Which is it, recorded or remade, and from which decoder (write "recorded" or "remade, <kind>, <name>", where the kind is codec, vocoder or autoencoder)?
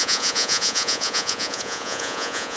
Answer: remade, vocoder, Vocos